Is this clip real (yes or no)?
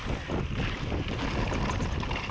yes